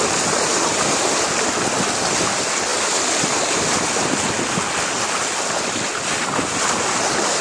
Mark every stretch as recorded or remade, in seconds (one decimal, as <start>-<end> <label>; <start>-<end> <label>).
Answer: 0.0-7.4 recorded